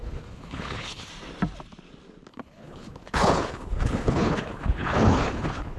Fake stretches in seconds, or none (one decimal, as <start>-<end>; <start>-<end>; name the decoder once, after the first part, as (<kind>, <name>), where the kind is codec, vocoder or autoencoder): 0.0-1.1 (codec, HILCodec); 2.3-5.8